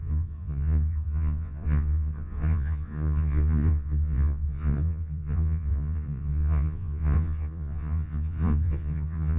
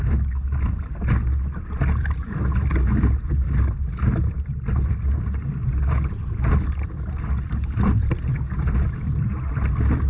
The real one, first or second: second